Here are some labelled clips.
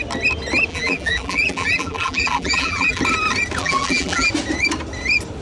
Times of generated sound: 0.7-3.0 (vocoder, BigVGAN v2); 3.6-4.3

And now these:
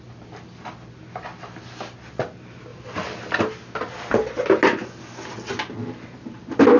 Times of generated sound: none